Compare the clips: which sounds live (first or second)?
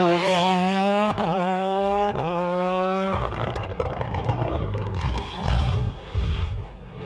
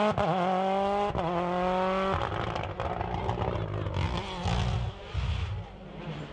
second